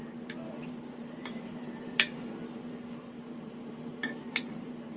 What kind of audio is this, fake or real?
fake